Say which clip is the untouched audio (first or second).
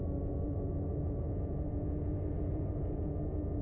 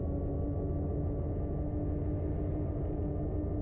second